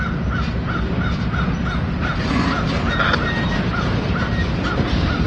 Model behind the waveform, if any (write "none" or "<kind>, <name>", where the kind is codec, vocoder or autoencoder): none